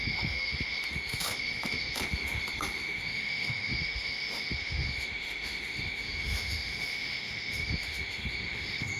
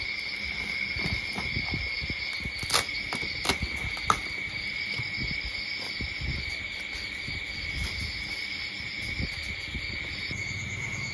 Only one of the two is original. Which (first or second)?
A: second